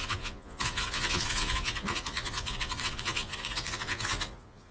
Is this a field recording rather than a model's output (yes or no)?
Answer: no